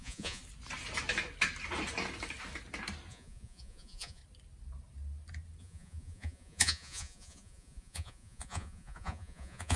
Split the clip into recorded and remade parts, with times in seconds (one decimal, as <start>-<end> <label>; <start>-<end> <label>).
0.0-0.4 remade; 0.4-3.1 recorded; 3.1-4.2 remade; 4.2-5.6 recorded; 5.6-9.8 remade